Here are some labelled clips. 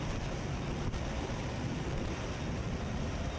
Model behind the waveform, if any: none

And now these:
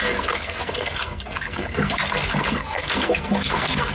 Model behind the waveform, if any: codec, SNAC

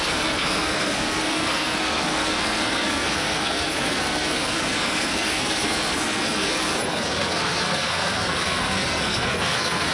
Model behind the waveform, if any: codec, SNAC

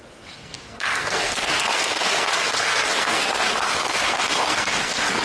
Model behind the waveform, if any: codec, SNAC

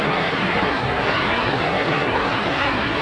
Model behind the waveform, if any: codec, SNAC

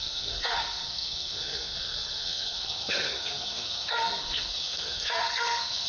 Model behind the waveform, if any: codec, SNAC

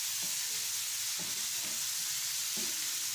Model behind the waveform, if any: none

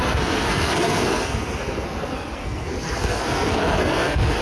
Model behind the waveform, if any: codec, SNAC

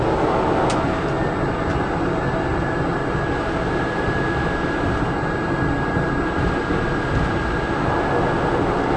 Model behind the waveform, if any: none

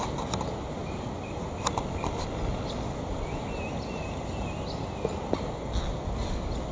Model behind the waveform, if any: none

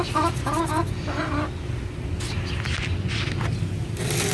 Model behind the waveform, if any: none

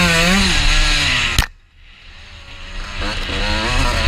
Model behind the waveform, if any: none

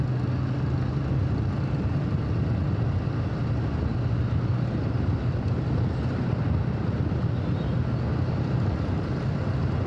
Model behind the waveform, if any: none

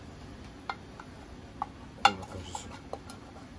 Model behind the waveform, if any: none